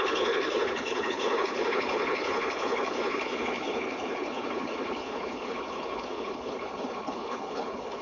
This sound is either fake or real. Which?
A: fake